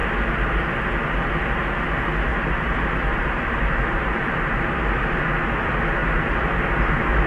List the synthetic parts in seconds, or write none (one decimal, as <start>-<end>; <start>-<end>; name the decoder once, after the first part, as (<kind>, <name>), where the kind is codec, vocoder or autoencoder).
2.3-5.2 (vocoder, BigVGAN v2)

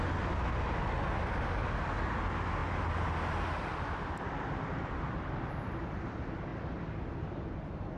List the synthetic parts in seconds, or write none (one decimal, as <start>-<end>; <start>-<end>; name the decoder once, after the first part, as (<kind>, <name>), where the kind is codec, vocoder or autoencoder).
2.6-5.3 (vocoder, BigVGAN v2); 6.5-8.0